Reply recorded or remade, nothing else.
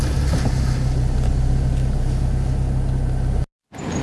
recorded